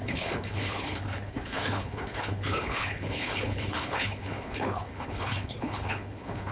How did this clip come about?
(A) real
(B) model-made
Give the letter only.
B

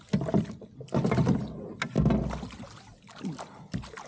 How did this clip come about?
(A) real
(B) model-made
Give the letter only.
A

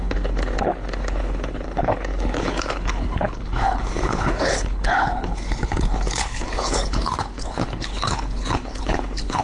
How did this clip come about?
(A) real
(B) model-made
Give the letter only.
B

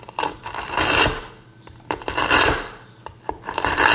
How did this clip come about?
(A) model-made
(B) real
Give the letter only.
B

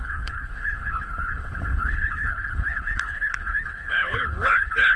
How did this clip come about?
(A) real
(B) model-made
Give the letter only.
B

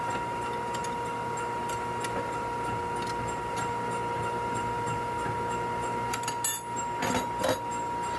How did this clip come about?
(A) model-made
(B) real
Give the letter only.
B